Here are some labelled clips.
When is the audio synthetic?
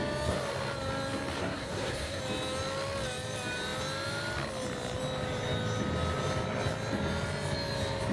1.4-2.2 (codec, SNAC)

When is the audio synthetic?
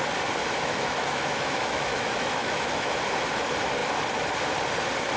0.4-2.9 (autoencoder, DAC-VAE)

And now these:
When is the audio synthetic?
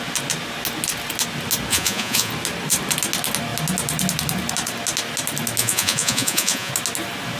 1.7-2.3 (vocoder, Vocos); 5.6-6.7